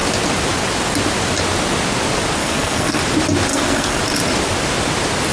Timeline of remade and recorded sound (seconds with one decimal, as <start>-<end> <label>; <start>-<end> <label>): 0.0-2.4 recorded; 2.4-3.0 remade; 3.0-3.5 recorded; 3.5-4.0 remade; 4.0-5.3 recorded